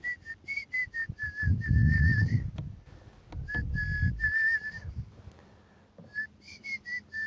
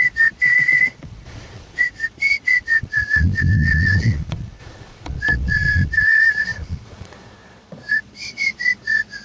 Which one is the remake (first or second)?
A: second